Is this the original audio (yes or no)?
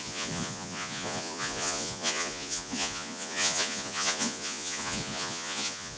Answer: no